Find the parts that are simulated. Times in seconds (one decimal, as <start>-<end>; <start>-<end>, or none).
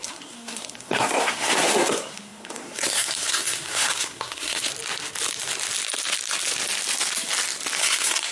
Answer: 0.0-4.6; 7.8-8.3